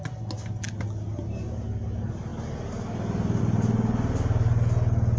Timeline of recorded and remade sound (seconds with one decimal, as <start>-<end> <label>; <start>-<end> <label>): 0.0-5.2 recorded